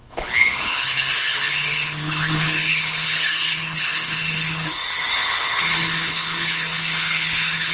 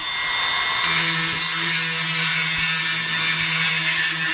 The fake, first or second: first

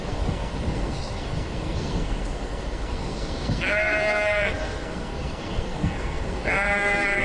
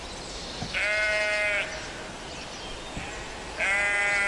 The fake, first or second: first